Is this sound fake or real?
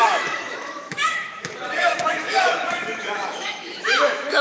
fake